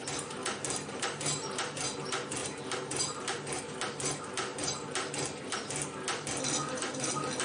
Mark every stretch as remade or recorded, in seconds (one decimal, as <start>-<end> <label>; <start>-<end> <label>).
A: 0.0-0.4 recorded; 0.4-1.8 remade; 1.8-2.4 recorded; 2.4-3.6 remade; 3.6-7.4 recorded